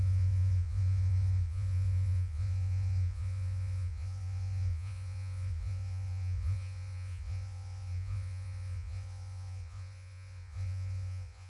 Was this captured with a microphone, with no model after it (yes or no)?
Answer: no